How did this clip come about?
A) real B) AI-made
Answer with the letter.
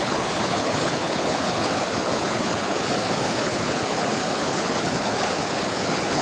B